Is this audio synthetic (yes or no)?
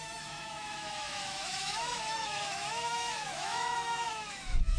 yes